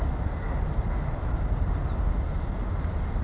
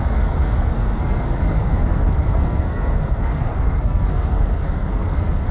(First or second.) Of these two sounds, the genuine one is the first